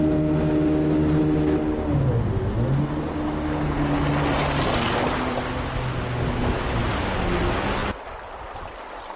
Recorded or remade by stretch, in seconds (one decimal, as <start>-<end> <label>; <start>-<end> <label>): 0.0-7.8 recorded; 7.8-8.4 remade; 8.4-9.2 recorded